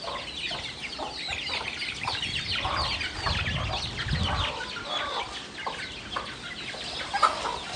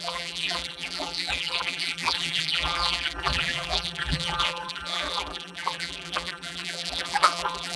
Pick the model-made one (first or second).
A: second